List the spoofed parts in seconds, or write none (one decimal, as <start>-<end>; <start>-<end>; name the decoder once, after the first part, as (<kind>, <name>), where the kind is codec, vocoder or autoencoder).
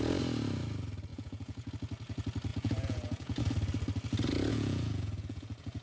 1.1-1.7 (vocoder, Vocos); 2.5-3.4; 4.5-5.8